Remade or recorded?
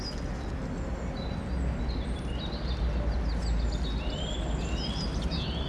recorded